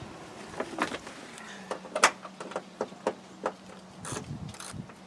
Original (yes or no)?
yes